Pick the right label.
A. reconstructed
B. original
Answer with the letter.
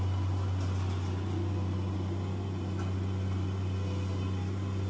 B